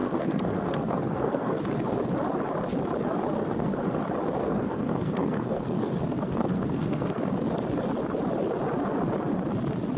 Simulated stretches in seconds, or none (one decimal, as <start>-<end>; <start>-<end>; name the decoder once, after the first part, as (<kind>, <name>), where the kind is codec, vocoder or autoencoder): 0.0-1.6 (codec, SNAC); 3.4-4.0; 4.4-7.3